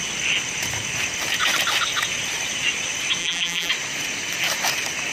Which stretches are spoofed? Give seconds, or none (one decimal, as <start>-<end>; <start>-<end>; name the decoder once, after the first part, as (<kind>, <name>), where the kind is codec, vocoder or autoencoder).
3.2-3.7 (vocoder, BigVGAN v2)